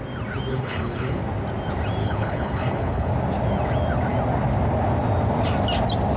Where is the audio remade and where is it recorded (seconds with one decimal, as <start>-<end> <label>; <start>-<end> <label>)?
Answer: 0.0-0.5 recorded; 0.5-1.2 remade; 1.2-2.0 recorded; 2.0-3.1 remade; 3.1-6.2 recorded